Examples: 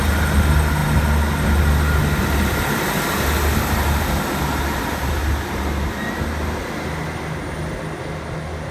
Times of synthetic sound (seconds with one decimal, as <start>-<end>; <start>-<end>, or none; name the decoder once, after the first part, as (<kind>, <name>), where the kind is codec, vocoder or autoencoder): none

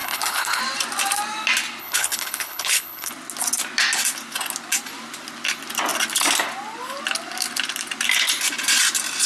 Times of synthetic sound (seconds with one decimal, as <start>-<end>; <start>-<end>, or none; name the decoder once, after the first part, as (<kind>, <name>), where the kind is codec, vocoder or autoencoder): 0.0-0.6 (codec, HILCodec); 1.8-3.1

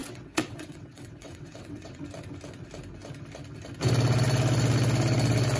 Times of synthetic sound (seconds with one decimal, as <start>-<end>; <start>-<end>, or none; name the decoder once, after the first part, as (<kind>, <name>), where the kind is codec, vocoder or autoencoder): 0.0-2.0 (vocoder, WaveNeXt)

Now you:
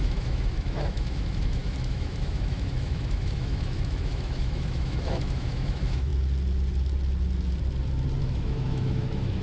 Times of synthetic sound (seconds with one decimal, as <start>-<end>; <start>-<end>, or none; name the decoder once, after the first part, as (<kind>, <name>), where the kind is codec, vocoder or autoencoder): 0.0-6.1 (autoencoder, DAC-VAE); 8.2-9.4

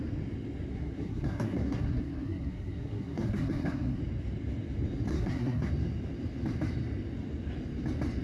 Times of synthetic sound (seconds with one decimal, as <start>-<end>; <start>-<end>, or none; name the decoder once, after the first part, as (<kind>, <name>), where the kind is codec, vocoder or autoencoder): 0.7-4.0 (codec, SNAC); 5.1-5.7

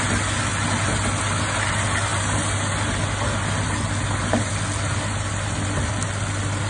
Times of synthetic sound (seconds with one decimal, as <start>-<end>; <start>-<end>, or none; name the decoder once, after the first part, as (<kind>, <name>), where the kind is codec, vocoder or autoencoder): none